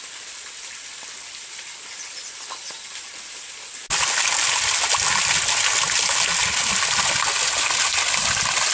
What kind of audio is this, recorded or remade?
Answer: recorded